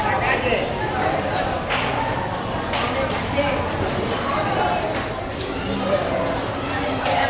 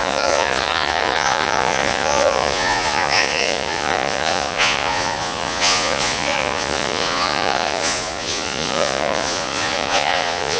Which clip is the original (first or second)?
first